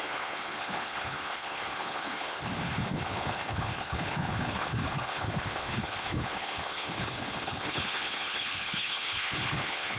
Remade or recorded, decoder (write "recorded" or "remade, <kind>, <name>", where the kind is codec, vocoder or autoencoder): remade, codec, HILCodec